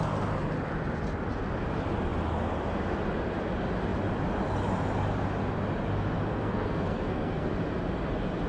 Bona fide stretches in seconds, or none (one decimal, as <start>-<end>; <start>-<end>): 0.0-6.3; 7.5-8.5